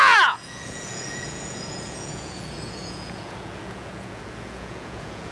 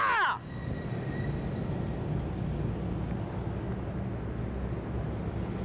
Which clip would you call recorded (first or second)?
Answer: second